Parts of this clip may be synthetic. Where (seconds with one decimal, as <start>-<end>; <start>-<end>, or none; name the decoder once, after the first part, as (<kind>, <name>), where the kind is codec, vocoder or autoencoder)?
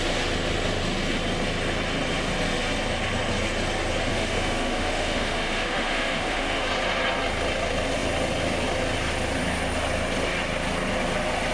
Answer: 4.1-6.6 (autoencoder, DAC-VAE)